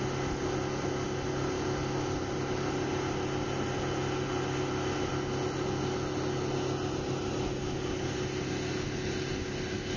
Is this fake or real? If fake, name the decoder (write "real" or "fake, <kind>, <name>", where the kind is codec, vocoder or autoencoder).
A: real